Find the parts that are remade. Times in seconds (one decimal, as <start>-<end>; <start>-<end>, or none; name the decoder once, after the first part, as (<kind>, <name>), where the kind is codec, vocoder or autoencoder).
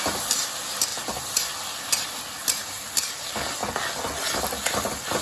none